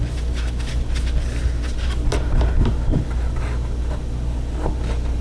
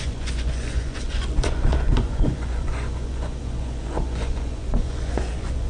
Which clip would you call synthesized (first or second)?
second